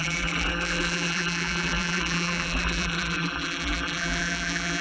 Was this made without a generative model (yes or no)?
no